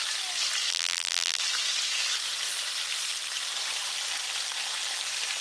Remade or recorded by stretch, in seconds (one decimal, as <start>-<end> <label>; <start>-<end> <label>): 0.0-0.7 recorded; 0.7-1.4 remade; 1.4-5.4 recorded

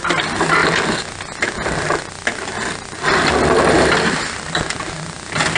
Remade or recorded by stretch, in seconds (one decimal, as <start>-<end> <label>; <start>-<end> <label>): 0.0-5.6 recorded

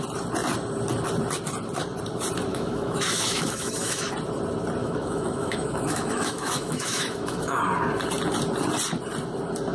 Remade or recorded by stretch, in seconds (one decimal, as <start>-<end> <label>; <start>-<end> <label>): 0.0-2.5 recorded; 2.5-4.1 remade; 4.1-4.8 recorded; 4.8-7.6 remade; 7.6-9.7 recorded